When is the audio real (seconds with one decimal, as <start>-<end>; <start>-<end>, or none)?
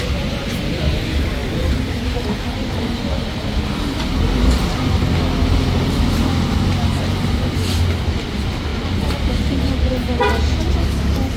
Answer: 0.0-1.4; 2.0-11.4